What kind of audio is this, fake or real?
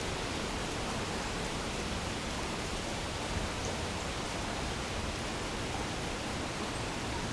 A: fake